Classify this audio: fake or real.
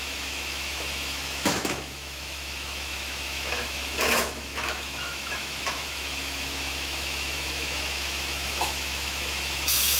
fake